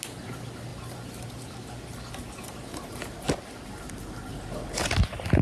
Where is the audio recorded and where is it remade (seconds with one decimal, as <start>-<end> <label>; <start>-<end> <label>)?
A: 0.0-5.4 recorded